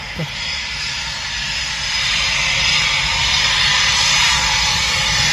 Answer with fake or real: real